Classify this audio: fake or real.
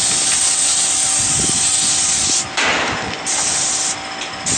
real